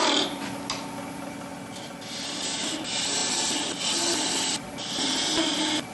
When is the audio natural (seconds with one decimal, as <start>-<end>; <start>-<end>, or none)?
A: 0.0-5.9